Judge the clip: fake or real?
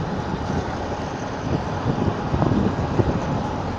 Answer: real